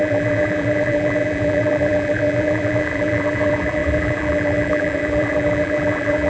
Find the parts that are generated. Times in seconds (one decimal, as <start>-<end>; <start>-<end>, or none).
0.0-6.3